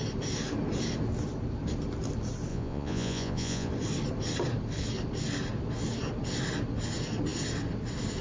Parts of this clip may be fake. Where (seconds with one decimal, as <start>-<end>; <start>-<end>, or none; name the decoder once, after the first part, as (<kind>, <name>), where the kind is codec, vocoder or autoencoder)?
2.5-3.7 (vocoder, Vocos)